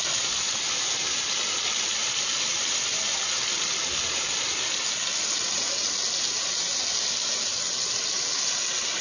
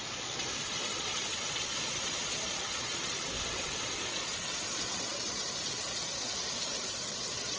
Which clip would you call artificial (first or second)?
second